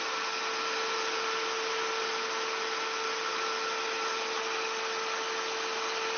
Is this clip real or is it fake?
real